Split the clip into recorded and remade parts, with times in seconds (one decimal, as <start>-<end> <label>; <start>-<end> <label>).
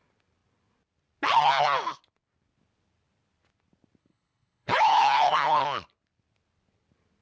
0.0-4.0 recorded; 4.0-5.6 remade; 5.6-7.2 recorded